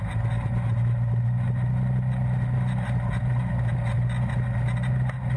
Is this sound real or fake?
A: real